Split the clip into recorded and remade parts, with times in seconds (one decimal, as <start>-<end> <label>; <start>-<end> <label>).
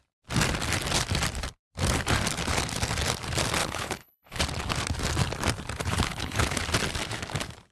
0.0-3.6 recorded; 3.6-4.4 remade; 4.4-5.8 recorded; 5.8-6.6 remade; 6.6-7.7 recorded